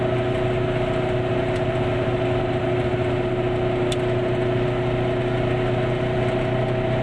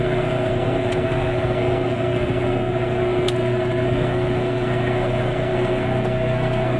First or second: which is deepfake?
second